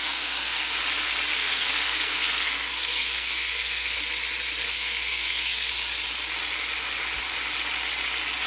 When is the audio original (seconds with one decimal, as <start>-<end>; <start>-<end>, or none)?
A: 0.8-1.4; 4.0-4.6; 5.7-8.5